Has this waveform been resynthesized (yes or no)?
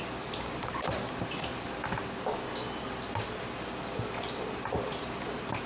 no